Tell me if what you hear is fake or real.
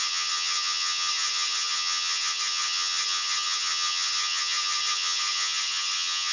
fake